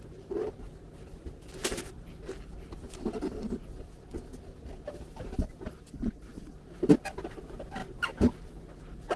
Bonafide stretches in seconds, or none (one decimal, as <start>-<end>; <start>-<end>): 0.0-9.2